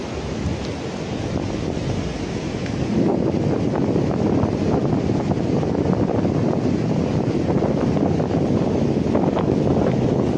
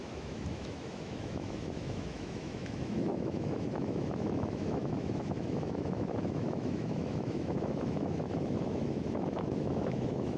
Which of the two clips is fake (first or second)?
second